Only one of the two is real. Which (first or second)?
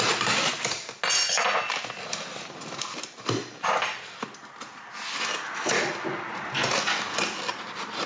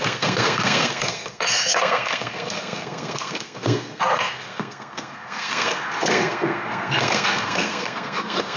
first